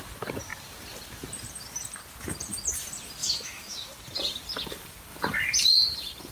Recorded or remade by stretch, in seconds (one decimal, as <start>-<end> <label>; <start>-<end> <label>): 0.0-3.2 recorded; 3.2-3.9 remade; 3.9-6.3 recorded

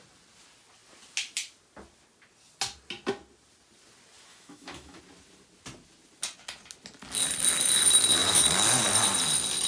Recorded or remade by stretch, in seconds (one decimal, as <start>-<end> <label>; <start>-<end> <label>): 0.0-4.3 recorded; 4.3-5.0 remade; 5.0-9.7 recorded